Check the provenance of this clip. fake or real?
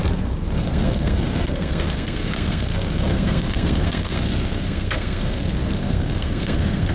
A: fake